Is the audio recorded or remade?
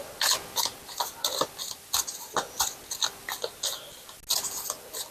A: recorded